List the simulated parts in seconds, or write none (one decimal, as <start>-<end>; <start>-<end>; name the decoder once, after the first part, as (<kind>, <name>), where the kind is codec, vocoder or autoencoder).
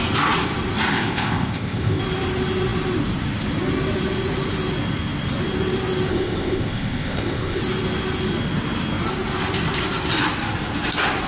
0.9-2.0 (codec, ZipCodec); 6.1-7.6